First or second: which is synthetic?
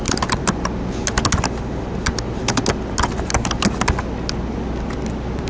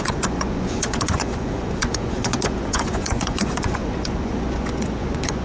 second